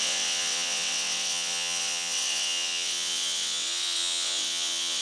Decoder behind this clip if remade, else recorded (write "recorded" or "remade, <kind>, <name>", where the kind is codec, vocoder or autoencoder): remade, vocoder, WaveNeXt